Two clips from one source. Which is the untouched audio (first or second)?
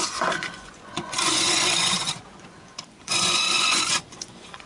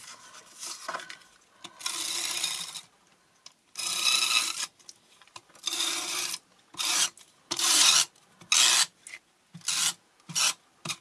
second